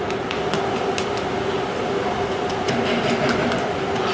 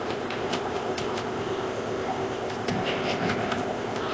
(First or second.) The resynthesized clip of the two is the second